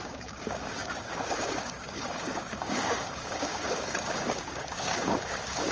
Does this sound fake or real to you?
fake